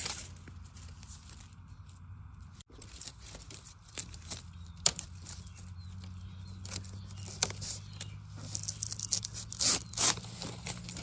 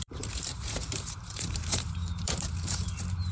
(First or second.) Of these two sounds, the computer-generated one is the second